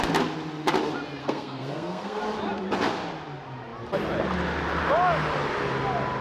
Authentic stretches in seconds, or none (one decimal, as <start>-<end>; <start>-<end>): 0.0-1.2; 2.2-6.2